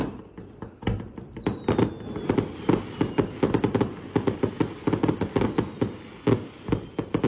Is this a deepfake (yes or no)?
no